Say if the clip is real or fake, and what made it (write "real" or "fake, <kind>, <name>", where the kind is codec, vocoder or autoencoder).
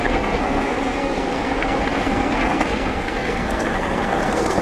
fake, codec, SNAC